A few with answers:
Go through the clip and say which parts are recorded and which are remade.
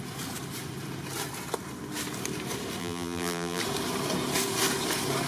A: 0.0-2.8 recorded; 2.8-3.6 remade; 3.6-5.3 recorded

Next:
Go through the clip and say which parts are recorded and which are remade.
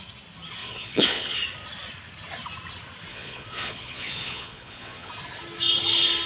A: 0.0-0.6 recorded; 0.6-1.4 remade; 1.4-3.1 recorded; 3.1-5.1 remade; 5.1-6.3 recorded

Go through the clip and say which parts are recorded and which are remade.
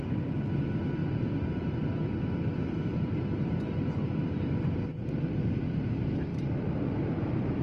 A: 0.0-1.0 recorded; 1.0-5.6 remade; 5.6-6.3 recorded; 6.3-7.6 remade